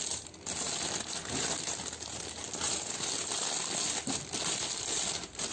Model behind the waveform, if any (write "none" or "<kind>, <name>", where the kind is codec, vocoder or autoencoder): none